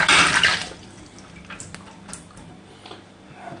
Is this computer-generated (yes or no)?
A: no